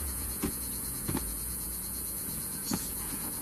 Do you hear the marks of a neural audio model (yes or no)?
yes